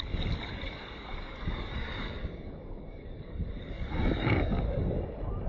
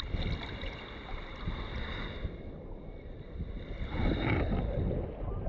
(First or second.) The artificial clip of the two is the first